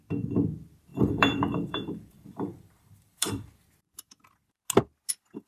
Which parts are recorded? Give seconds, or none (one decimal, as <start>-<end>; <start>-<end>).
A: 0.0-0.9; 3.5-5.5